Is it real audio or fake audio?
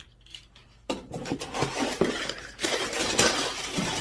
fake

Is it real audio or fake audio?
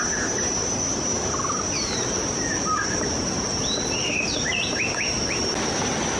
real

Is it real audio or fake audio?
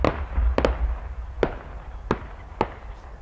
real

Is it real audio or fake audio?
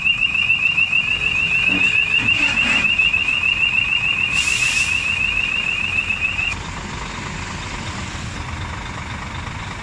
real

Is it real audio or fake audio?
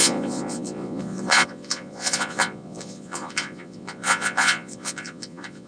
fake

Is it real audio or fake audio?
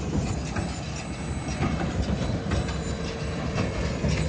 real